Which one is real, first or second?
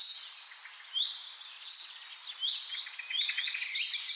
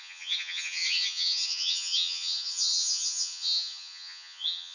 first